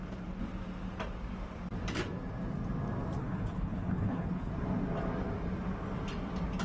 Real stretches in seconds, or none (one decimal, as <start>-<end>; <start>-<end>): 0.0-3.2; 4.5-6.6